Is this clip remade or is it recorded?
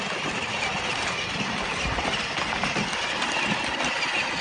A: recorded